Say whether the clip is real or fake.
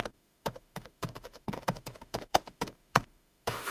fake